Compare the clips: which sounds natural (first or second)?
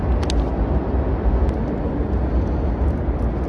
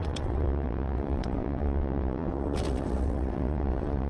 first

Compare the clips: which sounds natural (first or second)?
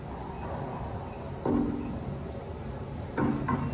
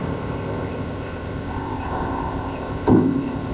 first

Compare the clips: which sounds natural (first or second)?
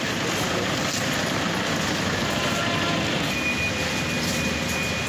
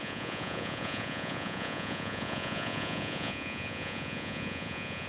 first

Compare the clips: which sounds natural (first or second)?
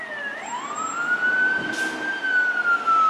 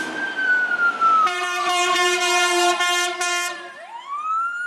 first